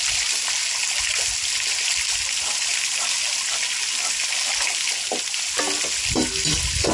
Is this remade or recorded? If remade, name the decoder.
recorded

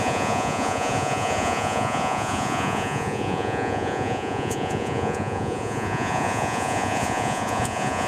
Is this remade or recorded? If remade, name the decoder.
remade, vocoder, Vocos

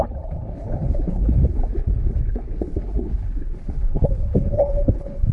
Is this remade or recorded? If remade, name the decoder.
remade, codec, HILCodec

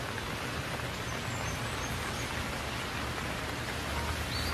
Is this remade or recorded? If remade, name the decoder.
recorded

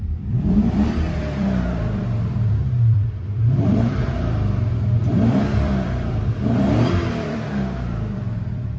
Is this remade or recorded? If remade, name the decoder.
remade, vocoder, BigVGAN v2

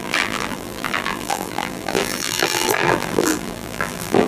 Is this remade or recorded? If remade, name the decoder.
remade, vocoder, BigVGAN v2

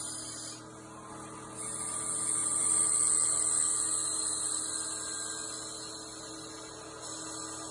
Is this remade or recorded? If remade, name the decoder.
recorded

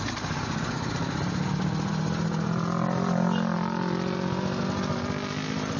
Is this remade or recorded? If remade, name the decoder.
recorded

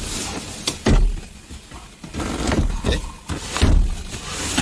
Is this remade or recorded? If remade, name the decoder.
recorded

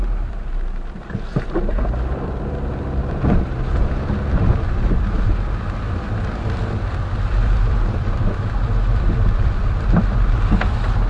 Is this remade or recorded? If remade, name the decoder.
remade, vocoder, BigVGAN v2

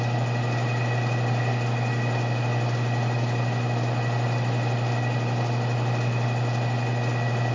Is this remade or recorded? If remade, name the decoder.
recorded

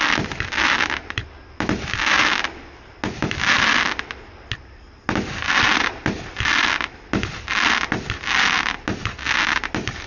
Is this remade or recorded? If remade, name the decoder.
recorded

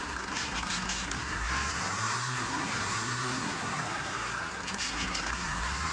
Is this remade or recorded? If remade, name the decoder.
remade, codec, SNAC